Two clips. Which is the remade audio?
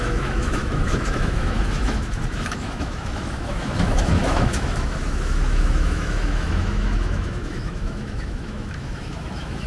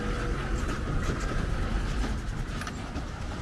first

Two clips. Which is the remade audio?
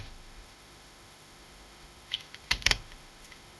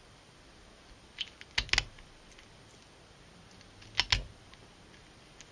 first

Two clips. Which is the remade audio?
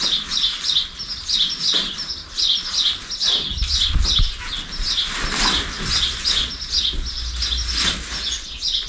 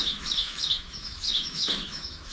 second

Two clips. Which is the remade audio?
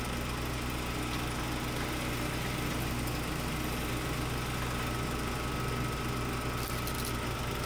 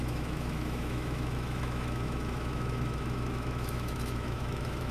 second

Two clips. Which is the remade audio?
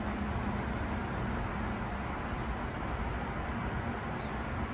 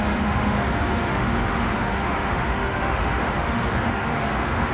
second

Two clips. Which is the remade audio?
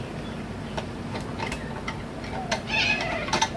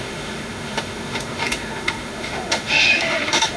second